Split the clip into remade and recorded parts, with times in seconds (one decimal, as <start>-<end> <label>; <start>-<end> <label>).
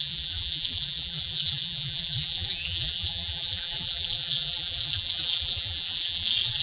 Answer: 0.0-6.6 remade